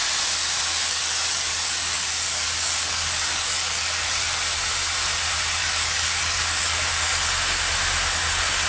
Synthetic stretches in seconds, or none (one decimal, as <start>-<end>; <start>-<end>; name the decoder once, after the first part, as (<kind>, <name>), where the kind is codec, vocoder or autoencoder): 0.7-4.4 (codec, DAC); 5.6-7.3